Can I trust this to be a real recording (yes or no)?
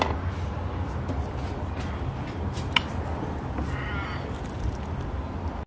yes